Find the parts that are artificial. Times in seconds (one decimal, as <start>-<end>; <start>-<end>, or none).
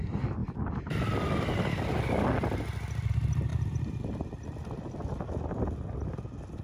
3.5-4.0